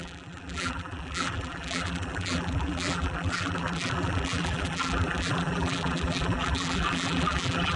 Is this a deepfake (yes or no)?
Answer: yes